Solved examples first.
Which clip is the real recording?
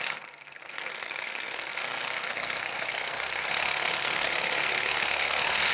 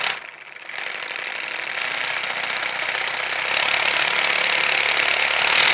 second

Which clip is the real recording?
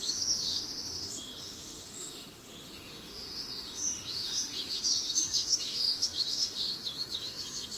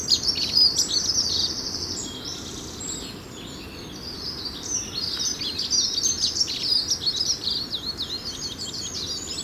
second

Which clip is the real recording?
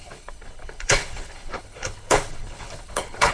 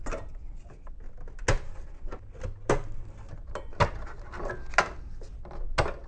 second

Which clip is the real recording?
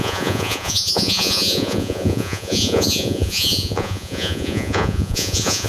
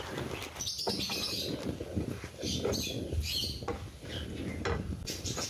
second